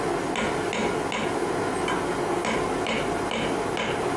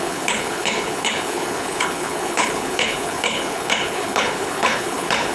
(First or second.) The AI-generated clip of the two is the second